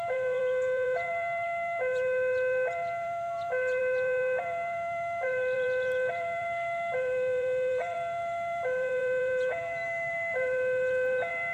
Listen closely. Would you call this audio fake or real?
fake